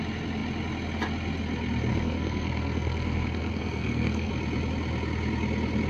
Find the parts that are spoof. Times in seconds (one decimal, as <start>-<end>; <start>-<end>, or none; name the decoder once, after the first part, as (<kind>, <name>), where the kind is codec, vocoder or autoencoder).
1.9-4.3 (codec, SNAC)

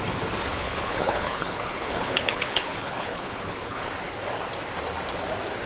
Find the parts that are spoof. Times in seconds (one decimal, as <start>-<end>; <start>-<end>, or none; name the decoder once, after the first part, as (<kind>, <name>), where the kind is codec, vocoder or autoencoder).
0.5-3.9 (codec, HILCodec)

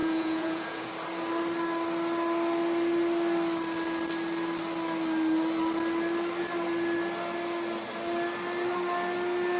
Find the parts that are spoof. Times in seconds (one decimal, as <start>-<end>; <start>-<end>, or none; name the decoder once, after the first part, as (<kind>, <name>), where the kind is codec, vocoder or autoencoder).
0.0-0.9 (vocoder, Vocos)

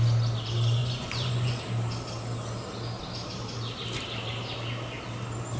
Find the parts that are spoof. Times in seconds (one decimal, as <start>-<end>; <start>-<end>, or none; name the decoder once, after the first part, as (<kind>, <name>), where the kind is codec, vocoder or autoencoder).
0.8-1.6 (vocoder, Vocos)